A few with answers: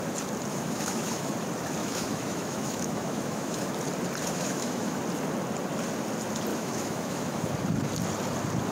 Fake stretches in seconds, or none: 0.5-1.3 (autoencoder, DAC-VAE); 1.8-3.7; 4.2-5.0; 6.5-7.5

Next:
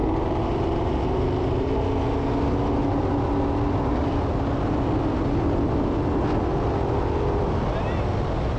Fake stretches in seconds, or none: none

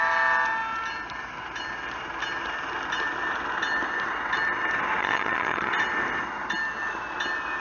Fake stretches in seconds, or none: 5.0-5.7 (vocoder, HiFi-GAN)

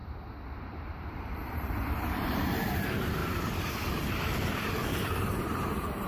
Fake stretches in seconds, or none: 0.6-3.2 (vocoder, BigVGAN v2); 4.1-6.1

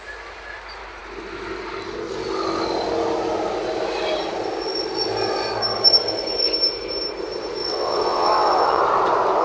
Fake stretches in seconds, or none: 7.6-8.8 (vocoder, WaveNeXt)